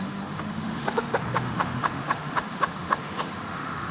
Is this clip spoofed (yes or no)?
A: yes